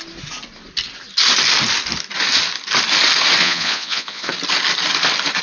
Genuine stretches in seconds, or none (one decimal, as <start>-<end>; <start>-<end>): 0.0-3.4; 4.3-5.4